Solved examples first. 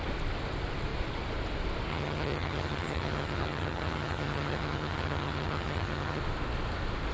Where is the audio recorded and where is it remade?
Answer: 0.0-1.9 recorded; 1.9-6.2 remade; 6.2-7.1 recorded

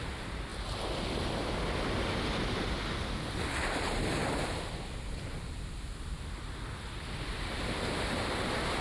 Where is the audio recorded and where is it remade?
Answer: 0.0-8.8 recorded

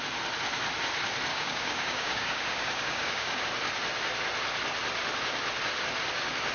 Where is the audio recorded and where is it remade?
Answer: 0.0-1.3 recorded; 1.3-3.4 remade; 3.4-6.5 recorded

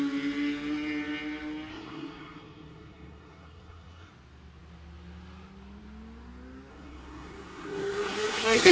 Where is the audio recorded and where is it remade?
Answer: 0.0-1.7 recorded; 1.7-4.1 remade; 4.1-6.7 recorded; 6.7-8.7 remade

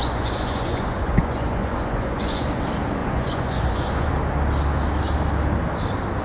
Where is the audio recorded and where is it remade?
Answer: 0.0-2.6 remade; 2.6-3.0 recorded; 3.0-4.1 remade; 4.1-6.2 recorded